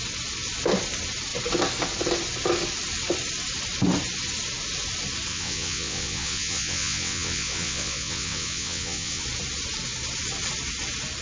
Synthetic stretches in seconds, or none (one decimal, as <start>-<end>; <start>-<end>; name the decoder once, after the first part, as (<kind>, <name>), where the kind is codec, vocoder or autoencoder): 5.3-9.2 (vocoder, WaveNeXt)